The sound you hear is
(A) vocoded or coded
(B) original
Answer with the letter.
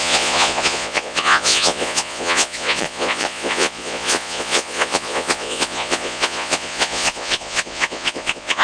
A